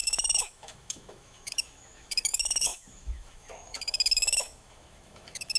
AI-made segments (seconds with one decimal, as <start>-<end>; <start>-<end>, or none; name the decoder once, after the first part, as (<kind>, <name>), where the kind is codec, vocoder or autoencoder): 0.0-5.6 (autoencoder, DAC-VAE)